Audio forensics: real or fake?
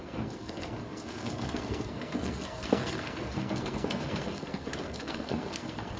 fake